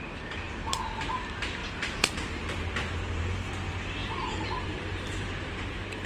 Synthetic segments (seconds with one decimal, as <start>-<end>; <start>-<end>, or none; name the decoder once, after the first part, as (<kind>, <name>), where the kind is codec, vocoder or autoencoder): 1.6-3.5 (vocoder, BigVGAN v2); 4.0-5.3